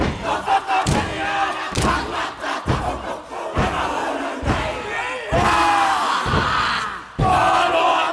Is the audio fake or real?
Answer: real